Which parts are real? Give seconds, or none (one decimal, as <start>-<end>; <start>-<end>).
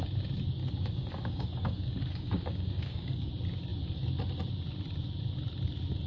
0.0-0.6; 3.3-6.1